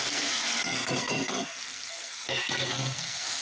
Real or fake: fake